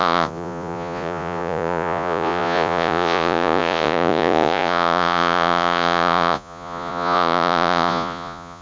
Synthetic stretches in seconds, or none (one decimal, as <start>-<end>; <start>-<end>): 0.0-8.6